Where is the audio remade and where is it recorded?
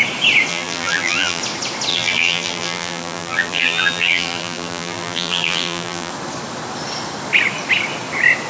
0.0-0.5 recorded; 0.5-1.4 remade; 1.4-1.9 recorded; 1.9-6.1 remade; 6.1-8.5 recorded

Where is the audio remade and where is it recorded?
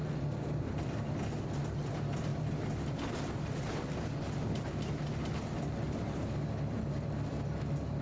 0.0-0.9 remade; 0.9-2.3 recorded; 2.3-4.7 remade; 4.7-8.0 recorded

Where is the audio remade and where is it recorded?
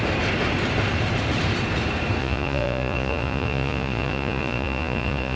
0.0-2.2 recorded; 2.2-5.4 remade